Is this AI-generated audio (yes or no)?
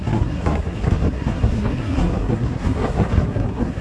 yes